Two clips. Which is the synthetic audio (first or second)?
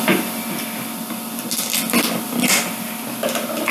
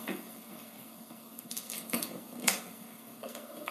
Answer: second